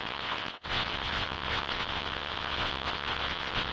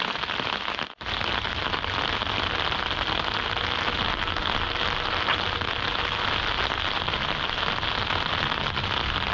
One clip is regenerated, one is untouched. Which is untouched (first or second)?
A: second